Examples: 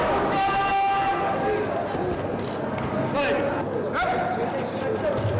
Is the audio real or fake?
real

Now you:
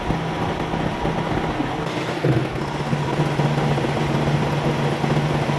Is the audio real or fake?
real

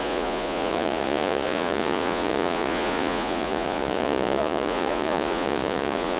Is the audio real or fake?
fake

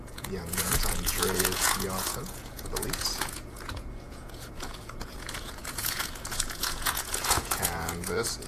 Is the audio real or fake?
fake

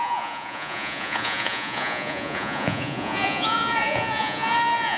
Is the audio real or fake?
fake